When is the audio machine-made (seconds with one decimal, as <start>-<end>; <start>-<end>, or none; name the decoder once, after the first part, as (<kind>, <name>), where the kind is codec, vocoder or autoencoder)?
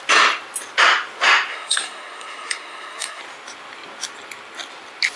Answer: 1.5-3.2 (codec, SNAC)